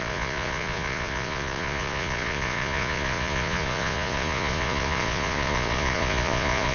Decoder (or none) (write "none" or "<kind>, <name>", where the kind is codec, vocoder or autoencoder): vocoder, Vocos